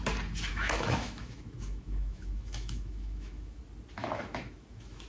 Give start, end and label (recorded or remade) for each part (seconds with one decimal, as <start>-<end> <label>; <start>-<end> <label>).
0.0-0.5 recorded; 0.5-3.6 remade; 3.6-4.0 recorded; 4.0-5.1 remade